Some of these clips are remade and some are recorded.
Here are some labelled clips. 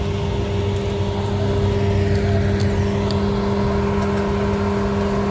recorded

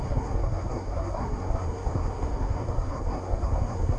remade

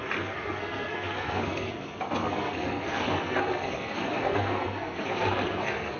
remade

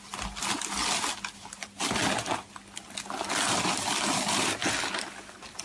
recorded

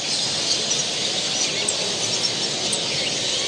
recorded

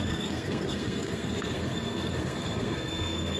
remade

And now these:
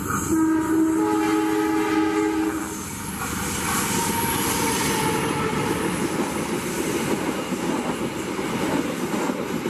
recorded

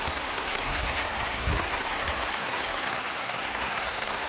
remade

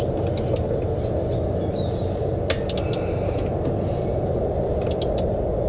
recorded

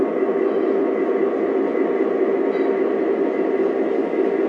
recorded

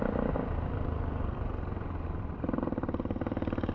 recorded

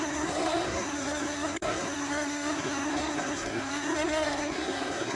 remade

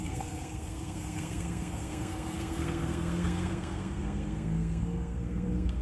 remade